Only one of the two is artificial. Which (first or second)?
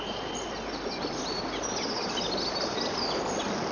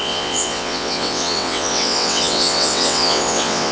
second